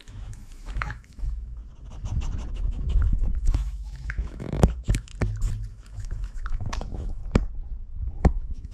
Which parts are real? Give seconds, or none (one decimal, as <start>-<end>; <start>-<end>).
1.6-2.5; 5.1-5.7; 7.2-8.2

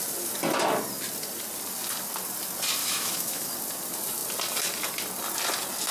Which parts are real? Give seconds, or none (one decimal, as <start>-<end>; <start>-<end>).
0.0-2.8; 3.5-5.9

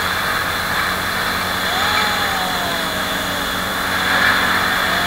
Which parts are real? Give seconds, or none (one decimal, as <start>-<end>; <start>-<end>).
0.0-2.7; 3.2-5.1

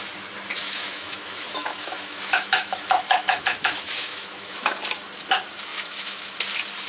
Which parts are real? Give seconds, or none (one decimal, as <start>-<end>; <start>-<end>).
0.0-0.6; 4.7-5.7; 6.3-6.9

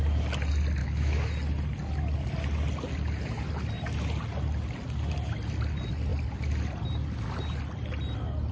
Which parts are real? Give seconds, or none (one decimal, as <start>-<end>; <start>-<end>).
0.0-0.8; 1.3-8.5

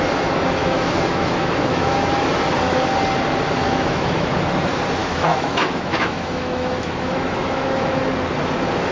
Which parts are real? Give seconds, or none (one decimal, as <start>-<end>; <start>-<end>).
0.0-0.6; 2.3-3.6; 4.3-5.0; 8.0-8.9

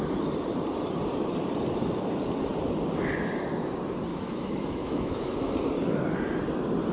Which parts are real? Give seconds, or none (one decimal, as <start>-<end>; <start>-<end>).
0.0-4.1; 5.5-6.9